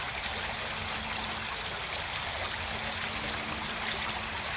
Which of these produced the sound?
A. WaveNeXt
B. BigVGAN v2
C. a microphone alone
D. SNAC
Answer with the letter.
C